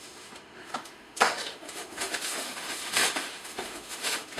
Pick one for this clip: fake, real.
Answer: fake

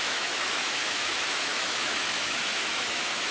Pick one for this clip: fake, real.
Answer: fake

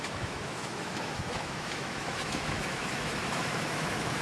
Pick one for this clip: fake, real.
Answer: fake